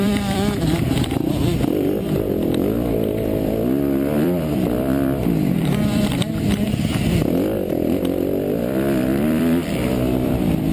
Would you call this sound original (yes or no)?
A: no